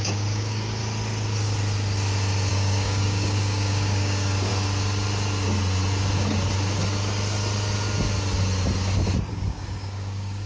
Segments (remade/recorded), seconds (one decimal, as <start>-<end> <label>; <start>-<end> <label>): 0.0-0.8 remade; 0.8-2.5 recorded; 2.5-4.5 remade; 4.5-9.3 recorded; 9.3-10.5 remade